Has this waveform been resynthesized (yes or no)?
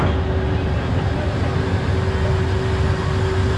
no